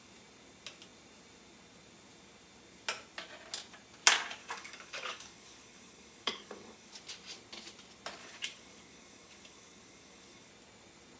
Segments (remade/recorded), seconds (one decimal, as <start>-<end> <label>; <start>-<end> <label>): 0.0-4.4 recorded; 4.4-6.9 remade; 6.9-8.2 recorded; 8.2-10.5 remade; 10.5-11.2 recorded